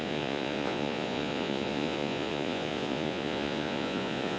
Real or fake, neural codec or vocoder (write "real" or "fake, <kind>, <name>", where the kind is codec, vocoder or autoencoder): fake, vocoder, Vocos